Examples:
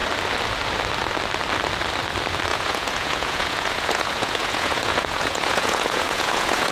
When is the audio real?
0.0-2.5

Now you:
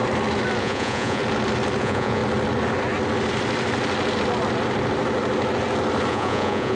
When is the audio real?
0.0-0.6; 1.2-1.8; 2.2-6.1

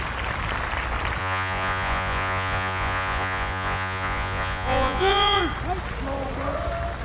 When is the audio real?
0.0-1.2; 5.4-7.0

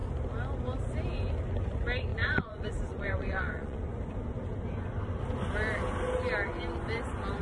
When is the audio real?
0.0-2.1; 3.8-7.4